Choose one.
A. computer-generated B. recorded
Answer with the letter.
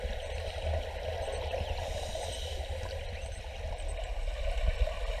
B